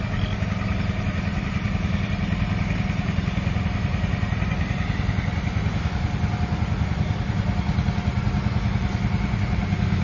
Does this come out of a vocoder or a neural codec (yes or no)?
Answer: yes